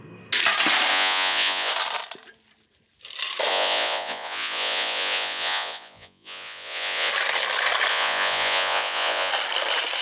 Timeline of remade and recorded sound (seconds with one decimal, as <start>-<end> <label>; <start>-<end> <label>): 0.0-0.9 recorded; 0.9-1.7 remade; 1.7-3.5 recorded; 3.5-7.1 remade; 7.1-7.9 recorded; 7.9-9.3 remade; 9.3-10.0 recorded